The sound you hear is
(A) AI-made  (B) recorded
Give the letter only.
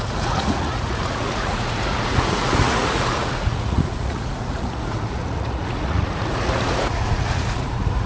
A